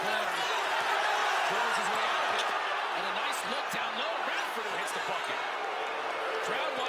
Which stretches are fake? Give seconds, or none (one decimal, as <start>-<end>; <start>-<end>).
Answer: none

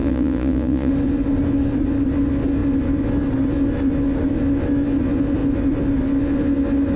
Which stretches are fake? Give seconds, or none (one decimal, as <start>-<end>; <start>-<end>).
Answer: 0.0-0.9

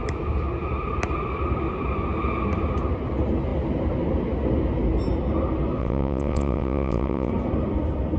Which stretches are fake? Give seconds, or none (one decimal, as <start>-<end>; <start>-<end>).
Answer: 5.8-7.3